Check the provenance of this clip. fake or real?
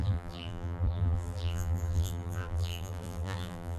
fake